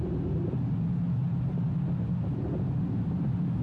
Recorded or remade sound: recorded